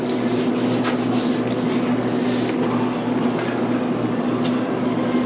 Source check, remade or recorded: recorded